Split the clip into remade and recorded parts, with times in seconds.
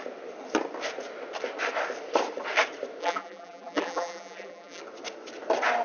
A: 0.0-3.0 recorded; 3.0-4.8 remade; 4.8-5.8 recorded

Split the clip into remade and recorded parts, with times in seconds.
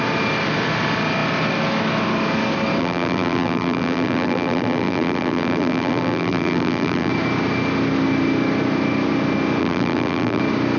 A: 0.0-2.8 recorded; 2.8-7.1 remade; 7.1-9.6 recorded; 9.6-10.4 remade; 10.4-10.8 recorded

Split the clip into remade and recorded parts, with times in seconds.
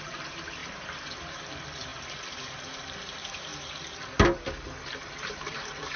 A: 0.0-3.5 remade; 3.5-5.0 recorded; 5.0-6.0 remade